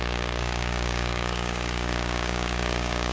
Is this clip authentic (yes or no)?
no